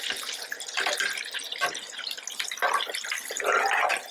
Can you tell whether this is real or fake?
real